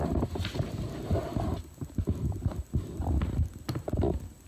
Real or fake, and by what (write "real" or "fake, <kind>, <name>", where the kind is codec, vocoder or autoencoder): real